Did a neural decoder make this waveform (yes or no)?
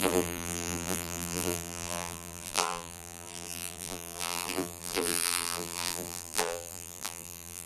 yes